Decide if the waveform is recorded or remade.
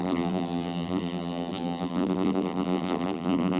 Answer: remade